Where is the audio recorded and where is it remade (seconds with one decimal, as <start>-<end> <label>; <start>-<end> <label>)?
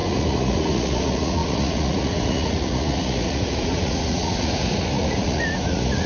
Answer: 0.0-6.1 remade